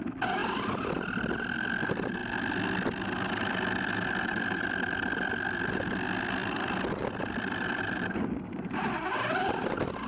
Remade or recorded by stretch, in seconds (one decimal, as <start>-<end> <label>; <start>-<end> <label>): 0.0-0.4 recorded; 0.4-1.2 remade; 1.2-6.4 recorded; 6.4-9.2 remade; 9.2-10.1 recorded